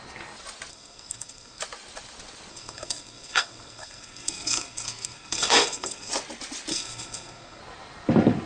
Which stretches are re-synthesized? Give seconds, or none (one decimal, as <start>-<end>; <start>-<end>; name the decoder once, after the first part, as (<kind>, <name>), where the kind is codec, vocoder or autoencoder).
0.7-1.6 (codec, SNAC); 2.5-6.1; 6.7-7.6